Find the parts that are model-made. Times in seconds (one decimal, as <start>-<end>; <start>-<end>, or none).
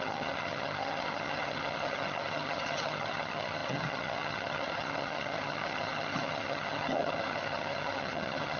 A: 0.0-8.6